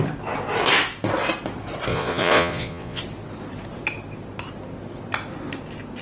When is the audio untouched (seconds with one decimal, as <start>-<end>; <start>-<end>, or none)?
0.0-1.9; 3.0-6.0